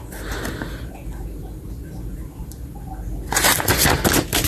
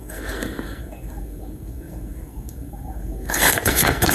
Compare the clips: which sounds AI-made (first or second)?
second